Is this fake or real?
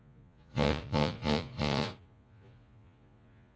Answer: fake